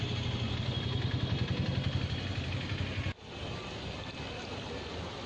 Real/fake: real